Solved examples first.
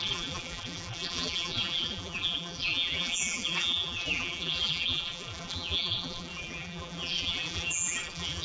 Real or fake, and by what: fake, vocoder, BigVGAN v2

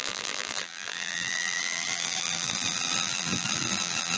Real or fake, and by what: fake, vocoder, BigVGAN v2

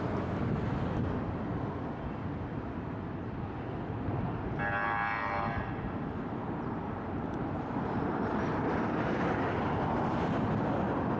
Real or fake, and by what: real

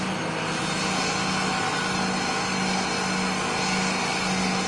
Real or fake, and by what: real